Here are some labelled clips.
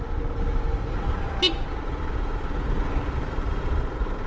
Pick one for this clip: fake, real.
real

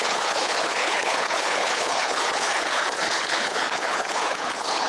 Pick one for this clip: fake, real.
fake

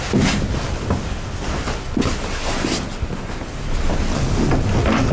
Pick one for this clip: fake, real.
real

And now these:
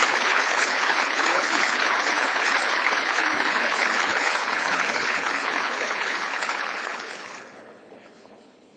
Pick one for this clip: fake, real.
fake